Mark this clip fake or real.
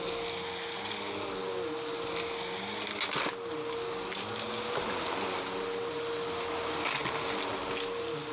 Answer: real